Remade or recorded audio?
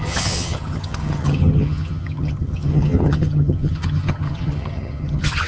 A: remade